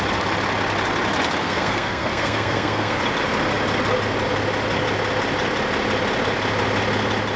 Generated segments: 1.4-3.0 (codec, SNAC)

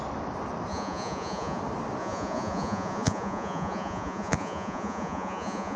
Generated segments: 0.7-1.6 (vocoder, Vocos); 2.0-5.8